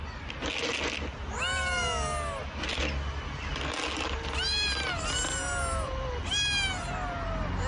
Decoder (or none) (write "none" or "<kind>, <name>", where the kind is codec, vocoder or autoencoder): none